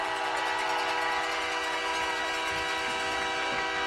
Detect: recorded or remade recorded